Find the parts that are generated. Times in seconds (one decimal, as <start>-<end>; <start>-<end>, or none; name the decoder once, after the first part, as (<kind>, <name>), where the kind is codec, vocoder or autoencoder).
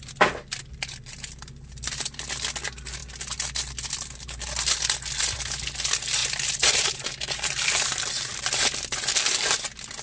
6.2-9.6 (vocoder, BigVGAN v2)